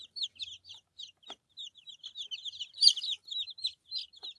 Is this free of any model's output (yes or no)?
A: yes